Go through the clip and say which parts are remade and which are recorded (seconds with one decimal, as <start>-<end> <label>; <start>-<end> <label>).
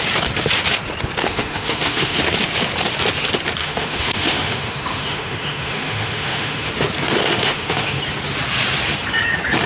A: 0.0-1.2 recorded; 1.2-2.2 remade; 2.2-3.6 recorded; 3.6-6.7 remade; 6.7-7.2 recorded; 7.2-8.0 remade; 8.0-9.7 recorded